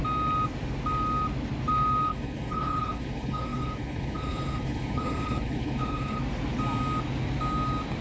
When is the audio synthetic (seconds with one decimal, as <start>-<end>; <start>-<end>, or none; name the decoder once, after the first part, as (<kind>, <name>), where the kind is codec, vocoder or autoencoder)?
2.1-6.2 (codec, HILCodec)